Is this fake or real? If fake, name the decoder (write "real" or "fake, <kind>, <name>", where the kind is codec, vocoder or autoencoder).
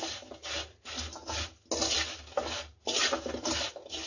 real